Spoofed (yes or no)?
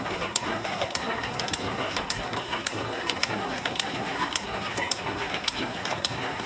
yes